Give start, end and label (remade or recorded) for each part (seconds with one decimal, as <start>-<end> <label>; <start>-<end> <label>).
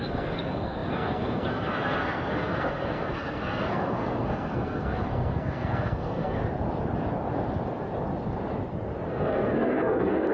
0.0-6.4 remade; 6.4-9.1 recorded; 9.1-10.3 remade